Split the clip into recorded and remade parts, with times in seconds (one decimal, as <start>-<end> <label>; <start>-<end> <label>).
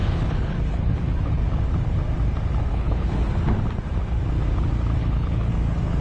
0.0-1.4 remade; 1.4-2.7 recorded; 2.7-3.3 remade; 3.3-5.0 recorded; 5.0-5.5 remade; 5.5-6.0 recorded